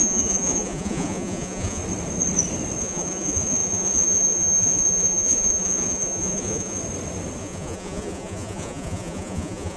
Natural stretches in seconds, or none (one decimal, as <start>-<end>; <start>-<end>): 1.8-2.8; 6.8-7.4